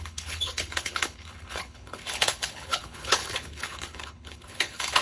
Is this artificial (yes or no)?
yes